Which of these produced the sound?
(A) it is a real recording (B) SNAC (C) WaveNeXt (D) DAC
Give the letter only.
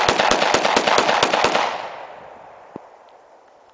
A